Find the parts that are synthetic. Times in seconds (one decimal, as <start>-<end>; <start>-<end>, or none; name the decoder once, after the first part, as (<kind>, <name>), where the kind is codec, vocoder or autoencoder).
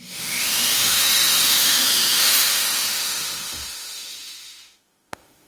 0.0-5.5 (autoencoder, DAC-VAE)